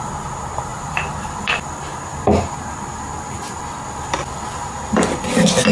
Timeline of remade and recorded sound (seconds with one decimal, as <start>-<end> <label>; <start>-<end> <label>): 0.0-0.7 recorded; 0.7-1.4 remade; 1.4-5.7 recorded